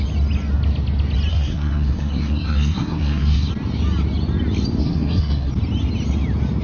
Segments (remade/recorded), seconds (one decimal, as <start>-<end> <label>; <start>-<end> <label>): 0.0-1.3 recorded; 1.3-3.5 remade; 3.5-4.8 recorded; 4.8-5.5 remade; 5.5-6.6 recorded